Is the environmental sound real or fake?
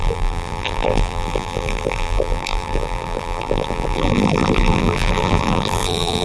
fake